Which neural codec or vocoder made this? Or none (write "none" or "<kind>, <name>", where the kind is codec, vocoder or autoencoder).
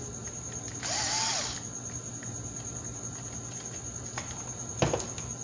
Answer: none